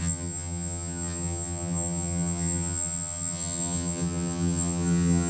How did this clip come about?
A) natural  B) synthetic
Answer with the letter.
B